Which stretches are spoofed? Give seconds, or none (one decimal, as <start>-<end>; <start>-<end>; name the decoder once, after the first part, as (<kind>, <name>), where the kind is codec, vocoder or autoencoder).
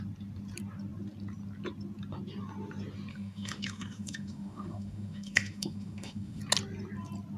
3.1-6.4 (autoencoder, DAC-VAE)